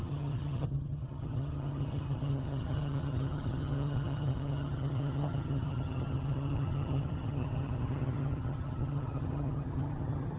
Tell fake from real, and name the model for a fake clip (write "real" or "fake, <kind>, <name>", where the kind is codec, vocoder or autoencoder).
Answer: fake, vocoder, HiFi-GAN